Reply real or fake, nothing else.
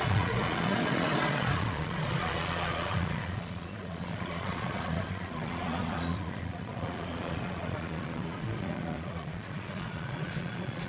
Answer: fake